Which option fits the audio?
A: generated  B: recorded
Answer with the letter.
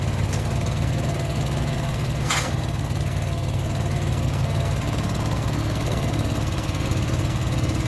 A